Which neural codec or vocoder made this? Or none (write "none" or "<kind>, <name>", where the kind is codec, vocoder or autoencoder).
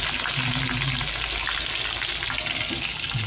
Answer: none